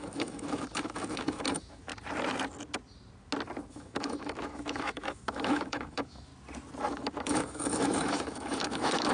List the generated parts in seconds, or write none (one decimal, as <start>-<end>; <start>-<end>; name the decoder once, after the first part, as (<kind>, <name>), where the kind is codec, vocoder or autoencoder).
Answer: 0.0-1.9 (autoencoder, DAC-VAE); 3.7-6.3; 6.9-9.1